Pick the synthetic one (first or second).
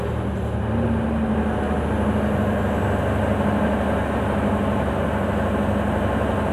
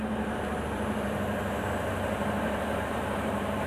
second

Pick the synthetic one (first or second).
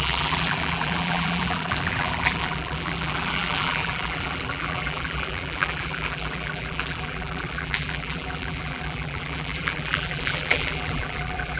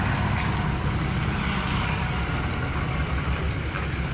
first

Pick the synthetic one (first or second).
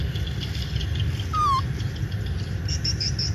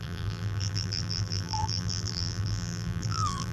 second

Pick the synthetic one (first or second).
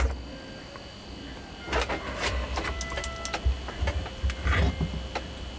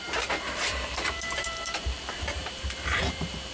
second